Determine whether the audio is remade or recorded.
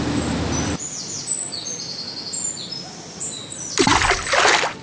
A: recorded